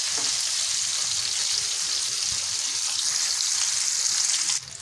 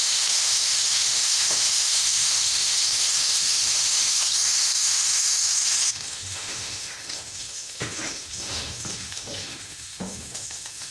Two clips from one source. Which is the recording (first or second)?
first